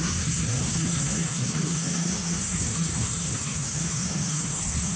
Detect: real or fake fake